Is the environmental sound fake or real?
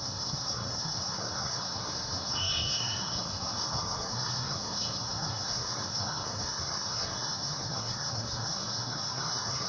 fake